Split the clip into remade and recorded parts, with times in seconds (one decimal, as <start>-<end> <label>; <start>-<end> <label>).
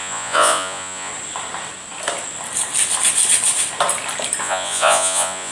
0.0-1.1 remade; 1.1-4.4 recorded; 4.4-5.5 remade